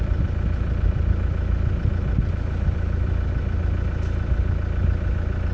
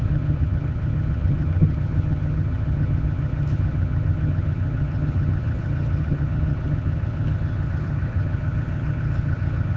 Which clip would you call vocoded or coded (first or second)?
second